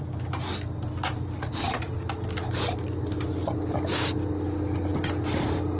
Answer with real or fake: real